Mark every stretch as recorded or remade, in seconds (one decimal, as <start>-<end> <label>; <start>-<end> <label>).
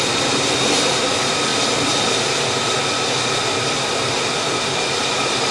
0.0-5.5 recorded